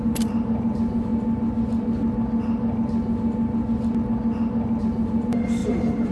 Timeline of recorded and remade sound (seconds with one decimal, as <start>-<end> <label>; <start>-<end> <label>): 0.0-1.1 remade; 1.1-4.8 recorded; 4.8-6.1 remade